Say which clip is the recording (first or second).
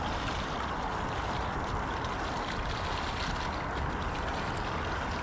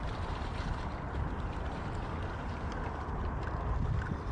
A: first